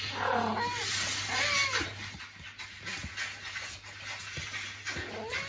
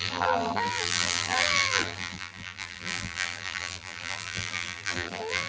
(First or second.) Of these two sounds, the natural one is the first